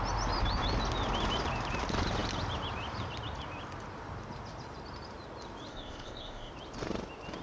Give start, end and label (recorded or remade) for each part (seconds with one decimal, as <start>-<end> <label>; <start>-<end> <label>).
0.0-5.7 recorded; 5.7-6.5 remade; 6.5-7.4 recorded